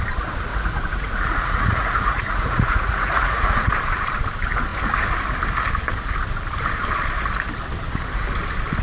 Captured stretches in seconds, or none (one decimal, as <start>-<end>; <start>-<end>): 0.0-0.5; 3.7-8.8